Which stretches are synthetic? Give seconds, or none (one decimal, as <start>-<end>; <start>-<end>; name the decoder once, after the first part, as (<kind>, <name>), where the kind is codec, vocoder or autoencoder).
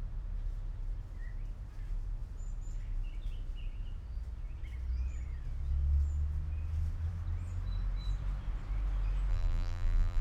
9.3-10.2 (vocoder, BigVGAN v2)